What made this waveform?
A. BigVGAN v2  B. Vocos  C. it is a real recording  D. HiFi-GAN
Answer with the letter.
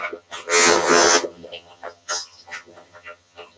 D